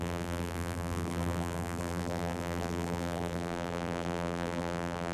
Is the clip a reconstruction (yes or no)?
yes